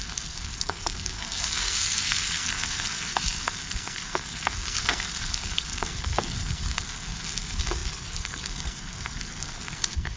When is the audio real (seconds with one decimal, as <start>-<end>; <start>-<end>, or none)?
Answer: none